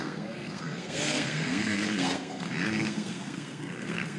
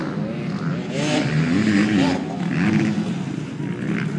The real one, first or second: second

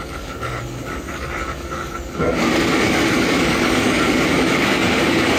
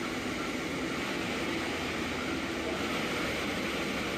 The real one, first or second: second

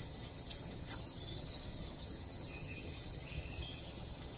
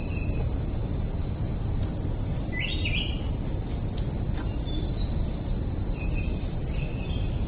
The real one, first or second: second